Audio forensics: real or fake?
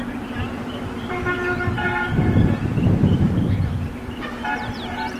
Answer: fake